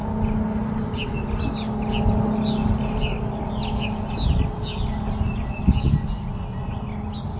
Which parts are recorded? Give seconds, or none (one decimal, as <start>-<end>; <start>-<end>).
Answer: 0.0-7.4